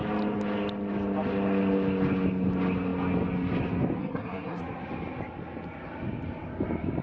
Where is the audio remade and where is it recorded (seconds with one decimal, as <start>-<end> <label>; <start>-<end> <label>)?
0.0-4.0 recorded; 4.0-4.6 remade; 4.6-7.0 recorded